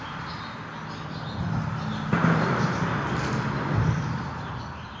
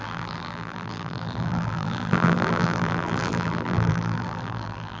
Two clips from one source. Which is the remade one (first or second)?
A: second